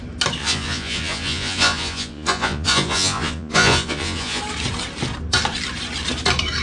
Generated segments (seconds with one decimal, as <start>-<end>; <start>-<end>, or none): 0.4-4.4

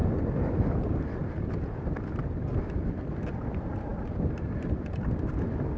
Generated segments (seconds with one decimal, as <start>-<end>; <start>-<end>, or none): none

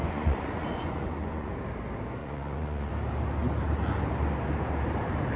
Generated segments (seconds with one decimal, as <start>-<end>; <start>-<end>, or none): 0.0-1.5; 2.2-2.9

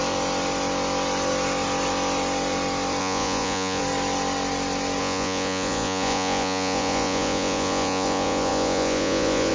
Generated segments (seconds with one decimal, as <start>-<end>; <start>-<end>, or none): 3.0-3.8; 5.0-9.5